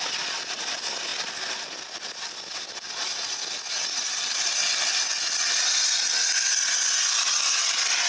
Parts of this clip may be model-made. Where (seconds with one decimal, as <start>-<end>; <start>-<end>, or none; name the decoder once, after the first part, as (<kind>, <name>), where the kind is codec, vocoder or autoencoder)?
none

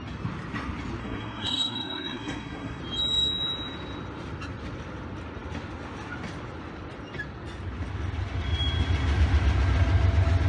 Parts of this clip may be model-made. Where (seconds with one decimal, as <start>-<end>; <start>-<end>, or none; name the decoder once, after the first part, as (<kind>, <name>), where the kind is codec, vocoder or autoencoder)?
1.0-2.8 (codec, SNAC)

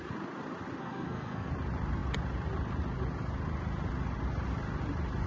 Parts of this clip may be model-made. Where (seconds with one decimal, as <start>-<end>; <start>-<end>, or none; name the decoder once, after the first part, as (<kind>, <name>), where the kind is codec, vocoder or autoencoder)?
0.8-1.5 (codec, SNAC)

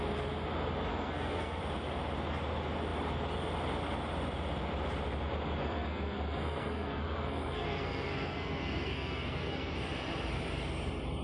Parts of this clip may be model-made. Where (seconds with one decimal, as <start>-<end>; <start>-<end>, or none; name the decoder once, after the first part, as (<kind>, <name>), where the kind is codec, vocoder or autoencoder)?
0.9-1.6 (codec, SNAC); 5.6-9.7

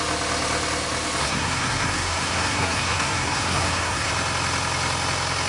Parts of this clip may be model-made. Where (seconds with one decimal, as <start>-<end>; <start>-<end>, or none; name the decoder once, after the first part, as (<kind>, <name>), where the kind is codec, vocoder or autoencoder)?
1.2-4.1 (codec, SNAC)

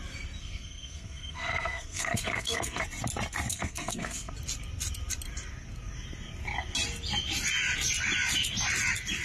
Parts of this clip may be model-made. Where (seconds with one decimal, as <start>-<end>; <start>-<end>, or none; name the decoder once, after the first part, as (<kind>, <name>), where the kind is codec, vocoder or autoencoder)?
0.4-2.8 (codec, SNAC); 3.5-4.3